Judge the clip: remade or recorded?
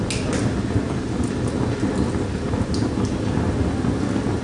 recorded